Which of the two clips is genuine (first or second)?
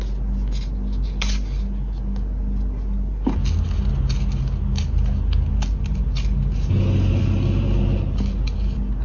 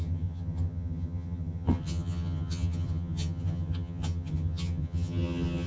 first